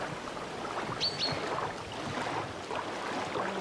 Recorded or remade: recorded